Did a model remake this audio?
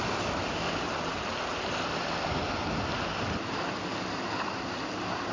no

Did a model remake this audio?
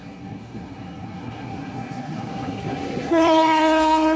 yes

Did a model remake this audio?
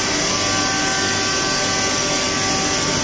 no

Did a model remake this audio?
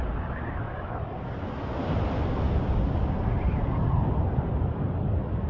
no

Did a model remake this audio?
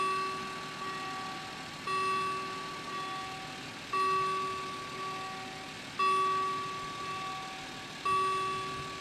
no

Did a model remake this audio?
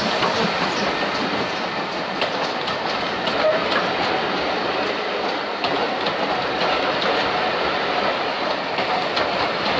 no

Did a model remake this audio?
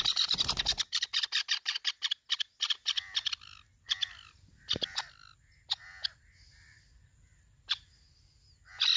no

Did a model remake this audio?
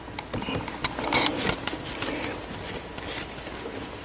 no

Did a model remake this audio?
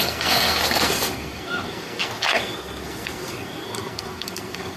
yes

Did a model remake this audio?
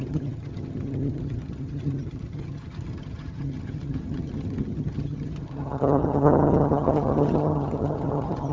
yes